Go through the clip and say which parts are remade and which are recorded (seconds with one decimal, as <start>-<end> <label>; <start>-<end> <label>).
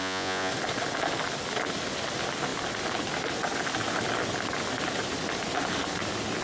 0.0-0.5 remade; 0.5-6.4 recorded